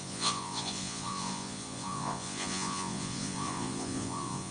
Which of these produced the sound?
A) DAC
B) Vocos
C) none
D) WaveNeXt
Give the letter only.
B